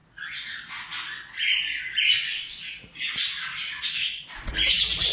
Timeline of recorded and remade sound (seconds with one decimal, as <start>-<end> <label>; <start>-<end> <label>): 0.0-5.1 recorded